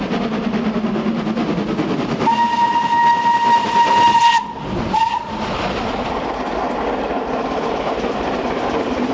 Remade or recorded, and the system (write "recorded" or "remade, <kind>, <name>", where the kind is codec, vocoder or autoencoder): recorded